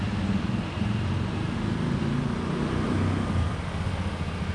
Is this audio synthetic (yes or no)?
no